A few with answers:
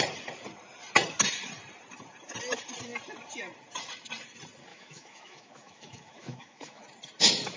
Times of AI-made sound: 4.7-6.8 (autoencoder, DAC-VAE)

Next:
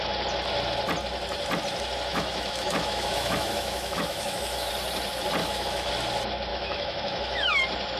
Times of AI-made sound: 2.1-4.7 (autoencoder, DAC-VAE); 5.4-5.9; 6.5-7.5

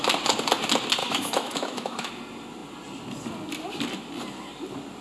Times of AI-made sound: 1.0-2.1 (autoencoder, DAC-VAE)

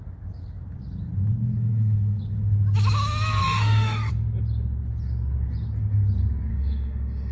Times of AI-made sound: 1.4-2.2 (autoencoder, DAC-VAE); 3.4-4.1; 6.5-7.3